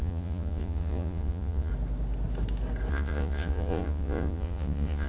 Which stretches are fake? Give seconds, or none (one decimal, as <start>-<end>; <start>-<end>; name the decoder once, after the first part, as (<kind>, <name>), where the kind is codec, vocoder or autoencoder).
0.0-1.7 (vocoder, Vocos); 2.9-5.1

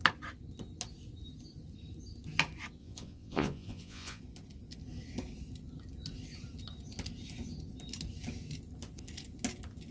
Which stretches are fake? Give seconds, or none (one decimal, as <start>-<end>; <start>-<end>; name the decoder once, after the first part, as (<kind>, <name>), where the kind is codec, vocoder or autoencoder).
2.8-4.2 (vocoder, Vocos)

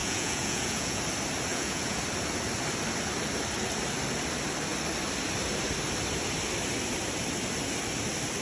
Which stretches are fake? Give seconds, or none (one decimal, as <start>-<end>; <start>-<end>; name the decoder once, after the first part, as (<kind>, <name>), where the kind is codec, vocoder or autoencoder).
0.0-1.0 (vocoder, Vocos); 1.5-2.0